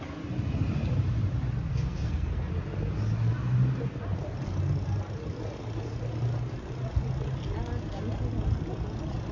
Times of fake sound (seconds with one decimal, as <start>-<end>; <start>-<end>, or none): 1.7-2.5